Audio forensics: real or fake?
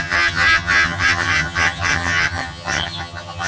fake